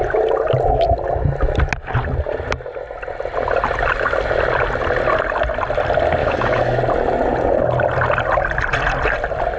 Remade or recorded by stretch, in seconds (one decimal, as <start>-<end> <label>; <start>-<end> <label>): 0.0-6.2 recorded; 6.2-6.8 remade; 6.8-9.6 recorded